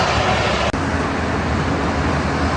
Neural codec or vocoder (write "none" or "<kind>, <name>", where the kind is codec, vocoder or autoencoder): none